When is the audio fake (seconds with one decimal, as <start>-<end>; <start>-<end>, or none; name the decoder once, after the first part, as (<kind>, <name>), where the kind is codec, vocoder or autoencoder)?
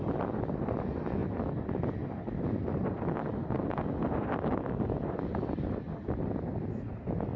none